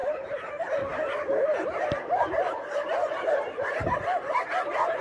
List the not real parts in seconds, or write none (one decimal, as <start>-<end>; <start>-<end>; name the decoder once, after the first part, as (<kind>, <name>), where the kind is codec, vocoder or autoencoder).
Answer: 0.0-0.5 (vocoder, BigVGAN v2)